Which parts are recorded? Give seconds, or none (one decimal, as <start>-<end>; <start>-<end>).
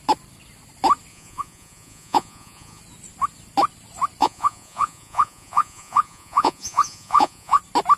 0.0-1.1; 2.8-4.2; 7.6-8.0